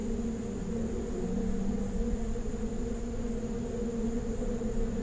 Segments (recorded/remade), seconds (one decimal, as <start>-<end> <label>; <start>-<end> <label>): 0.0-5.0 recorded